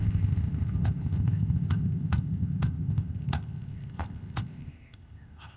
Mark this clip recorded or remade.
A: remade